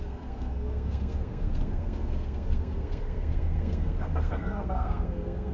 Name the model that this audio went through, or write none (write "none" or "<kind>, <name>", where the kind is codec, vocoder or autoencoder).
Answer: codec, SNAC